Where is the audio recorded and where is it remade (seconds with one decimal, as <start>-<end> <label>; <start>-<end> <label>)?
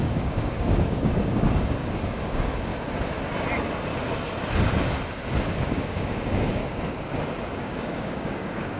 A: 0.0-2.7 remade; 2.7-5.6 recorded; 5.6-6.6 remade; 6.6-7.5 recorded; 7.5-8.8 remade